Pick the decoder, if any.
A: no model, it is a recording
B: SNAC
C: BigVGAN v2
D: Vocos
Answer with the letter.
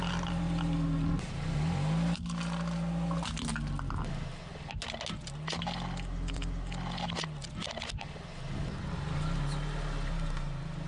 A